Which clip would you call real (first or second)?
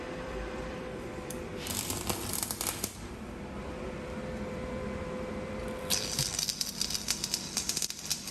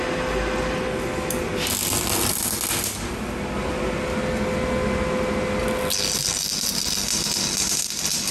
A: second